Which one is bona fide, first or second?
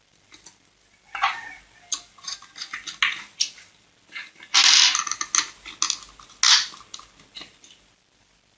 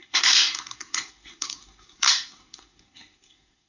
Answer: first